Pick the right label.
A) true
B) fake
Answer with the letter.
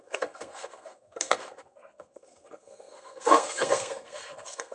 B